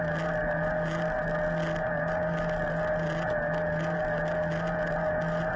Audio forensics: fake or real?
real